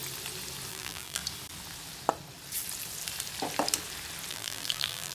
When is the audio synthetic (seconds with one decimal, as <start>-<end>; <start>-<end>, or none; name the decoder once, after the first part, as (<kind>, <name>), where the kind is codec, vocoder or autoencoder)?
0.7-1.2 (vocoder, BigVGAN v2); 4.3-5.1